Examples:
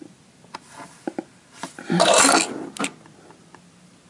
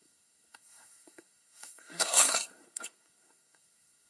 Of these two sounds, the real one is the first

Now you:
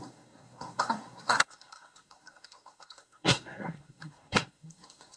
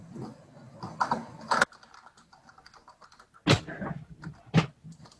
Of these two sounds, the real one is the second